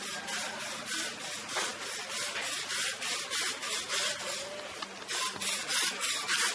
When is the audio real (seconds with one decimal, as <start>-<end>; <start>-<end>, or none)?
0.0-6.5